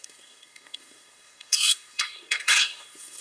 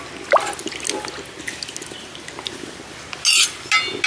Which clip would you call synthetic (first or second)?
first